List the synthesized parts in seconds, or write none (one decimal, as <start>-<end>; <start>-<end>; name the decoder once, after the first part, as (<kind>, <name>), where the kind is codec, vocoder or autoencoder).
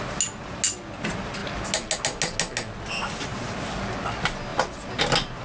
none